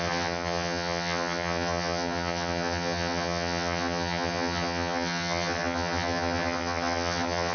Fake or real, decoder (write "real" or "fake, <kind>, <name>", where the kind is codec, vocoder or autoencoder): fake, vocoder, HiFi-GAN